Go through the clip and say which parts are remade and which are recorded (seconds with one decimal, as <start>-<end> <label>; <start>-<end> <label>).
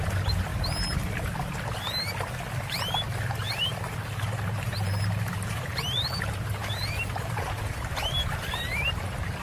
0.0-0.5 remade; 0.5-3.5 recorded; 3.5-9.4 remade